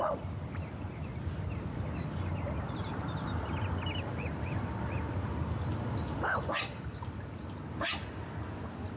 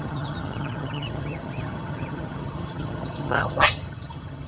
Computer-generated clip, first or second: second